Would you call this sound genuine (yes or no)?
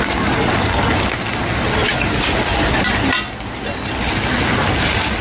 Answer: yes